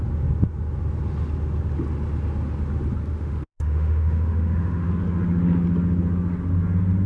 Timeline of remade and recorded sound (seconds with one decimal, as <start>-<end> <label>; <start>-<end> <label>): 0.0-3.1 recorded; 3.1-4.9 remade; 4.9-7.1 recorded